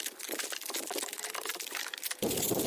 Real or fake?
fake